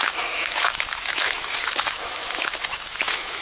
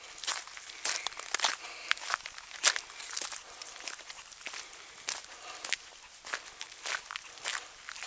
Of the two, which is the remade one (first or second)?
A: first